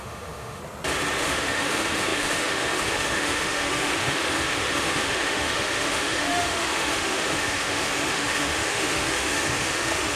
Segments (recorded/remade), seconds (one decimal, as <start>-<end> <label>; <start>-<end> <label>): 0.0-0.6 remade; 0.6-1.2 recorded; 1.2-10.2 remade